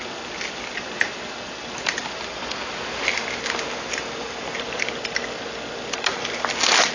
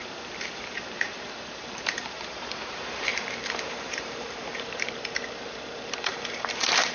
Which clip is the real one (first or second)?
first